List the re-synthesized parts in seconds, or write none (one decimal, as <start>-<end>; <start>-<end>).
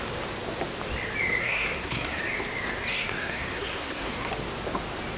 1.4-2.2; 2.9-4.3